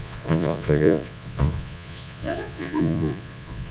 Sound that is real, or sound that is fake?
fake